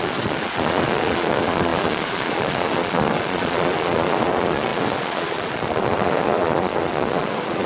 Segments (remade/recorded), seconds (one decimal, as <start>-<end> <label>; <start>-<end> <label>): 0.0-7.7 remade